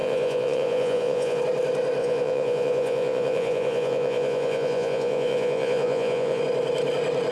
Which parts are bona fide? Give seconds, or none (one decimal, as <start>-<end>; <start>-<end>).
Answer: 1.4-2.0; 6.4-7.3